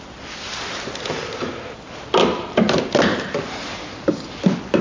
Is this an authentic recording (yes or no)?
yes